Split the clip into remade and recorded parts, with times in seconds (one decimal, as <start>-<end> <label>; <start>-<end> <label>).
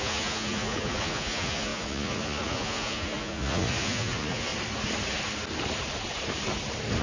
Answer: 0.0-4.5 remade; 4.5-7.0 recorded